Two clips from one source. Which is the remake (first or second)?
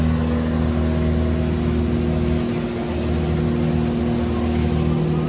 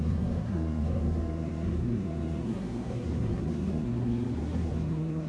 second